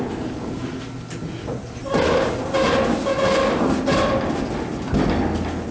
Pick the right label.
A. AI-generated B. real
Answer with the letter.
B